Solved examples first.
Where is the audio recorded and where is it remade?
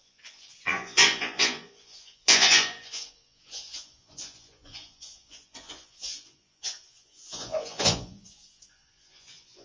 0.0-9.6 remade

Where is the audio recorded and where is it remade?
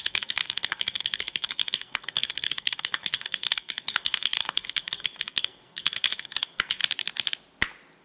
0.0-6.8 remade; 6.8-8.0 recorded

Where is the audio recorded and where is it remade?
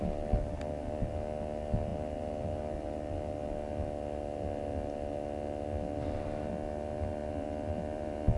0.0-7.2 recorded; 7.2-8.4 remade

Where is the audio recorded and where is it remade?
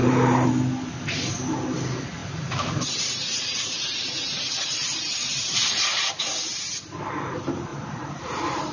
0.0-0.5 remade; 0.5-2.2 recorded; 2.2-6.2 remade; 6.2-7.7 recorded; 7.7-8.7 remade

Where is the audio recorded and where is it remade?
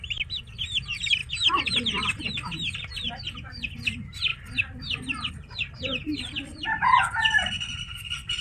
0.0-8.4 recorded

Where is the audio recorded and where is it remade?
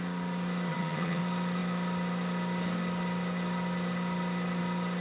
0.0-0.7 recorded; 0.7-1.2 remade; 1.2-5.0 recorded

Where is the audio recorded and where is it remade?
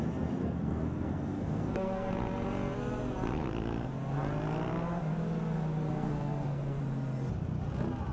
0.0-0.4 recorded; 0.4-2.1 remade; 2.1-5.9 recorded; 5.9-6.8 remade; 6.8-8.1 recorded